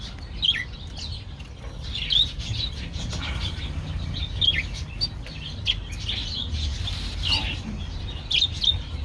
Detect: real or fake real